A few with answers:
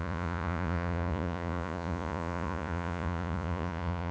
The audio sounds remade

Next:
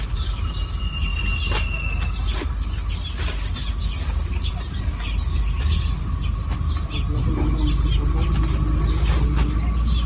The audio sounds recorded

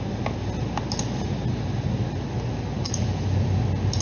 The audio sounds recorded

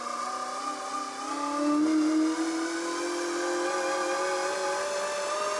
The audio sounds recorded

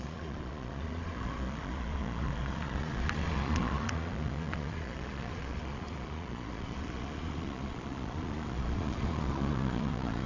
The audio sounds remade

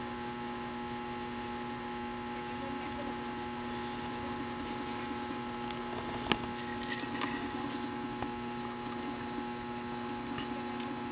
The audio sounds recorded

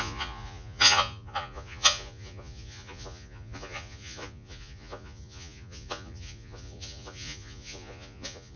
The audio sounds remade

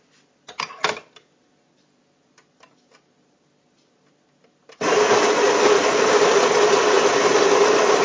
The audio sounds recorded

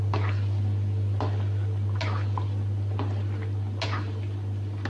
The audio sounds recorded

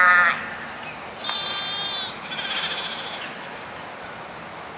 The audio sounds recorded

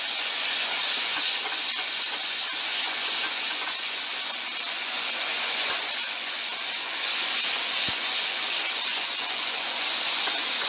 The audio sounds remade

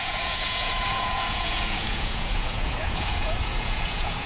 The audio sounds remade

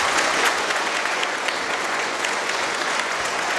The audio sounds remade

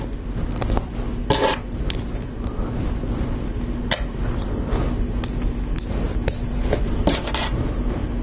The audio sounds recorded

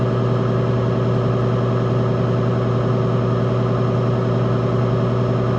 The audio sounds recorded